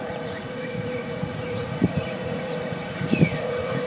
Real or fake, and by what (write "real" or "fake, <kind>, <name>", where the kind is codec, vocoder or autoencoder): fake, vocoder, Vocos